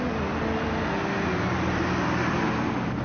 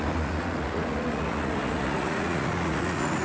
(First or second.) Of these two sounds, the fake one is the second